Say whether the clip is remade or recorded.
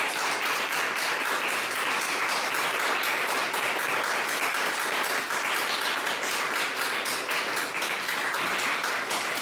recorded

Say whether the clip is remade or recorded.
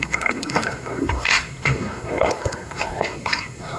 remade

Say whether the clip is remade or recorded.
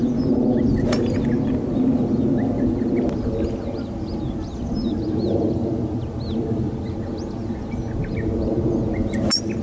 recorded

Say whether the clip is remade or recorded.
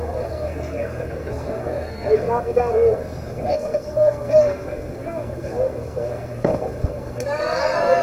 remade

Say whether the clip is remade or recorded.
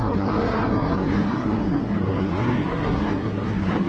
remade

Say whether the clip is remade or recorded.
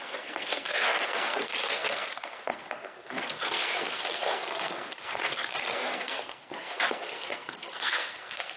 remade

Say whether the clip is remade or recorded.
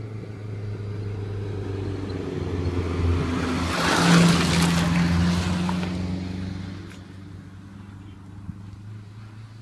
recorded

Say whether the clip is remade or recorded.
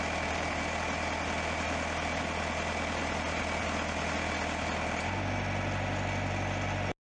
recorded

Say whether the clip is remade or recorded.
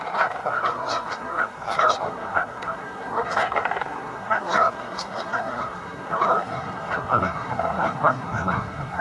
remade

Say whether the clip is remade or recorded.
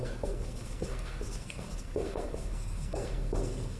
remade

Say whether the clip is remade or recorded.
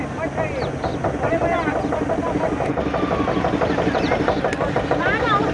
recorded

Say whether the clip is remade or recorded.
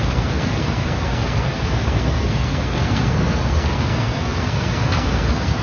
remade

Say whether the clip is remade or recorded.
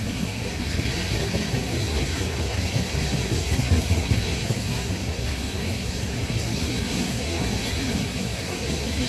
remade